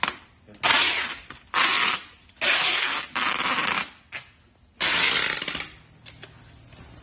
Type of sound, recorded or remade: recorded